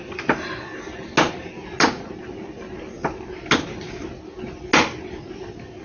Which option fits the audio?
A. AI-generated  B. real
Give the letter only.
B